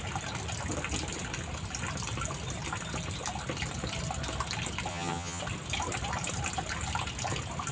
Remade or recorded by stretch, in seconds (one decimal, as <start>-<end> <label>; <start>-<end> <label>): 0.0-4.9 recorded; 4.9-5.4 remade; 5.4-7.7 recorded